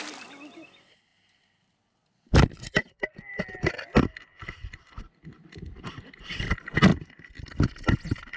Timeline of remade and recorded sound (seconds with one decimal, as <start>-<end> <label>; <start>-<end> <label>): 0.0-4.4 recorded; 4.4-5.8 remade; 5.8-8.4 recorded